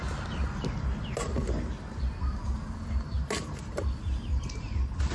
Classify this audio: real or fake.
real